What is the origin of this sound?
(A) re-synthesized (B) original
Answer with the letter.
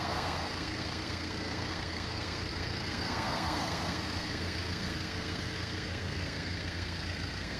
A